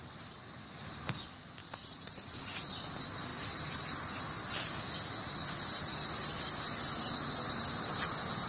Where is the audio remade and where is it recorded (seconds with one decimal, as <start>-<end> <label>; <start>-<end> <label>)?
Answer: 0.0-1.6 recorded; 1.6-2.7 remade; 2.7-8.5 recorded